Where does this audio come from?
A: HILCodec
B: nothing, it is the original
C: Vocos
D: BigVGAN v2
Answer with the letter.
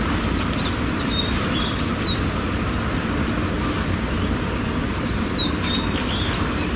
B